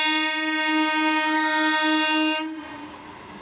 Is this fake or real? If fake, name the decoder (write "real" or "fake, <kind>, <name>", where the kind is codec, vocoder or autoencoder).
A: real